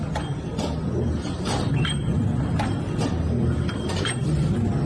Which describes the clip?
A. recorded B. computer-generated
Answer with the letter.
A